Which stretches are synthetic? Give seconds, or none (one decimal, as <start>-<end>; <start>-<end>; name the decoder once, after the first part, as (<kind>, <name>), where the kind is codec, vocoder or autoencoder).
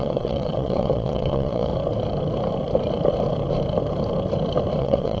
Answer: 0.0-1.7 (vocoder, WaveNeXt); 4.8-5.2